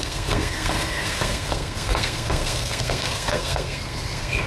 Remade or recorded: remade